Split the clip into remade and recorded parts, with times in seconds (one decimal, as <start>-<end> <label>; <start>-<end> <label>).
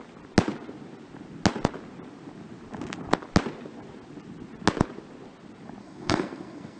0.0-5.8 recorded; 5.8-6.8 remade